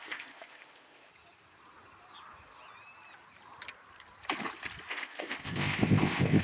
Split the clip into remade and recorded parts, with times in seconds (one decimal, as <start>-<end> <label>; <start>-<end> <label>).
0.0-1.1 remade; 1.1-4.9 recorded; 4.9-6.4 remade